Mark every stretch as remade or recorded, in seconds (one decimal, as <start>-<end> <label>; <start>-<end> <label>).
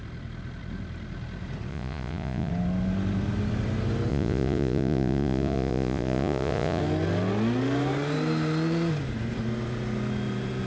0.0-1.7 recorded; 1.7-2.5 remade; 2.5-4.1 recorded; 4.1-6.8 remade; 6.8-10.7 recorded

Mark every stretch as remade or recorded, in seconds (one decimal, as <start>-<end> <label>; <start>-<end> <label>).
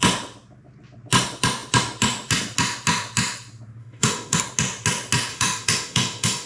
0.0-3.8 recorded; 3.8-4.4 remade; 4.4-5.3 recorded; 5.3-6.5 remade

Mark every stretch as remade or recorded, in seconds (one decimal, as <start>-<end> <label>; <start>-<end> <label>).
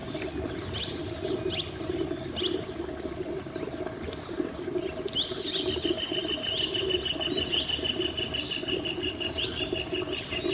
0.0-10.5 recorded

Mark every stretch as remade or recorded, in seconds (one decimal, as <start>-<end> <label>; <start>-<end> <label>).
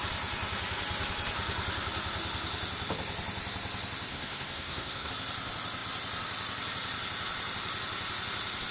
0.0-4.1 recorded; 4.1-5.1 remade; 5.1-8.7 recorded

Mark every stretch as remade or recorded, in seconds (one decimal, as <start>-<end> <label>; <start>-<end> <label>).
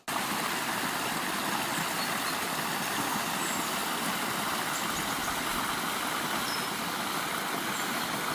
0.0-8.3 recorded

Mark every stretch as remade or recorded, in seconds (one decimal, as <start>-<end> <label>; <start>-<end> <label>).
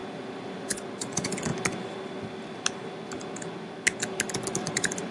0.0-0.7 recorded; 0.7-1.5 remade; 1.5-4.6 recorded; 4.6-5.1 remade